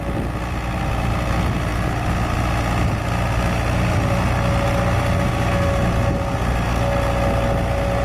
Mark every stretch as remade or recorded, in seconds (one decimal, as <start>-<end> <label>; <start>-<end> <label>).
0.0-8.0 recorded

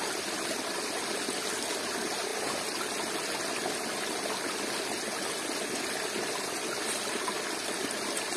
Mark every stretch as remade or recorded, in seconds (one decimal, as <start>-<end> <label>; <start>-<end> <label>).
0.0-8.4 recorded